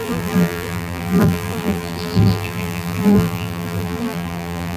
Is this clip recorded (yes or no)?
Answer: no